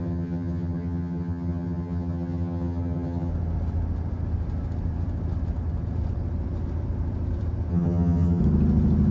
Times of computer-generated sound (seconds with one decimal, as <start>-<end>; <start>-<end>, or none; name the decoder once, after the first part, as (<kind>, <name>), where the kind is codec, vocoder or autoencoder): 0.0-3.3 (vocoder, HiFi-GAN); 7.7-8.4